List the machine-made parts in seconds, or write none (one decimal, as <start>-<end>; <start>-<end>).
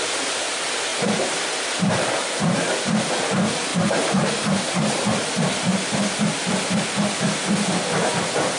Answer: 0.9-2.4; 3.7-4.6